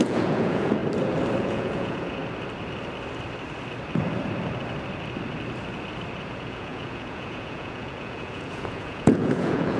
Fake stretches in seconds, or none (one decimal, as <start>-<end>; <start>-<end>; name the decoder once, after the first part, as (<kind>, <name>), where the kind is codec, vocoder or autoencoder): 0.0-0.8 (vocoder, Vocos); 1.4-2.2; 6.2-9.8